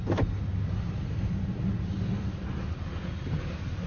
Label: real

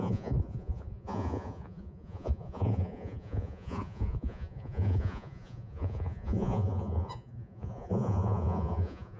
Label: fake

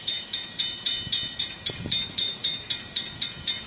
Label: fake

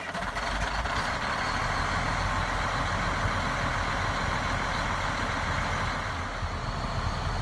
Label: real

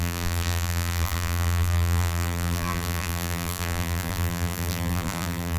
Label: fake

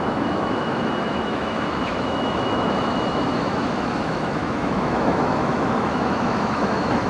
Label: fake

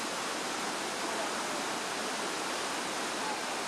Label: real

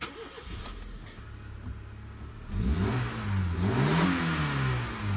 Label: real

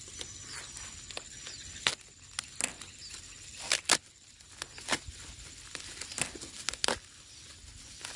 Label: real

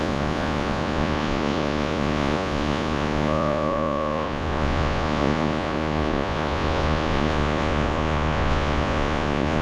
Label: fake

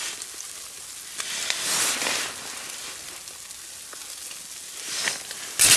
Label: real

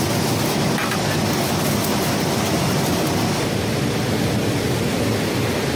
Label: real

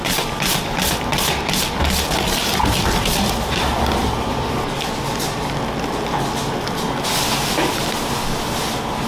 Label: real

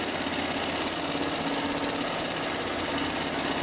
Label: real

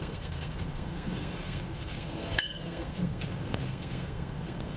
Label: fake